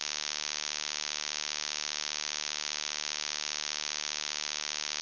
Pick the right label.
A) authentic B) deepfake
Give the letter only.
B